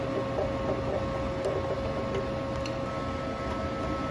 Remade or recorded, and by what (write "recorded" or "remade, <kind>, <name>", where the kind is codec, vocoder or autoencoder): recorded